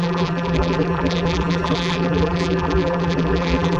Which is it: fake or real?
fake